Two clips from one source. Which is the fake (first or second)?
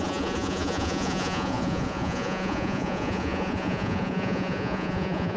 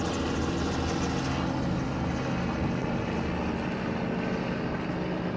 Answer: first